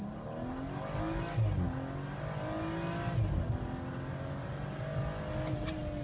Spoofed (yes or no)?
no